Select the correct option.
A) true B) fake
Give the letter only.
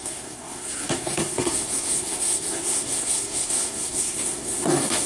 B